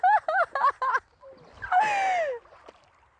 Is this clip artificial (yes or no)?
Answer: no